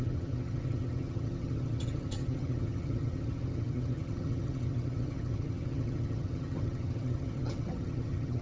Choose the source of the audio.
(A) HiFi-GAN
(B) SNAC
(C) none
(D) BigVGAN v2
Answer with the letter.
A